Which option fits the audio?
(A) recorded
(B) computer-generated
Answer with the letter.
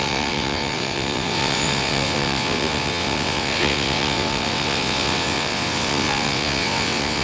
B